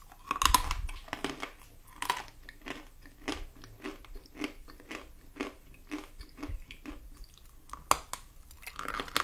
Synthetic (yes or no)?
no